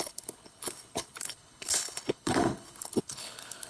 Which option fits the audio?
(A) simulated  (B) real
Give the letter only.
A